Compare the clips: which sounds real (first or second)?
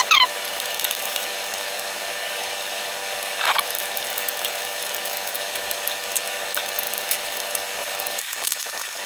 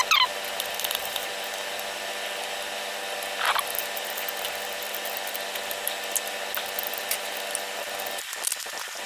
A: second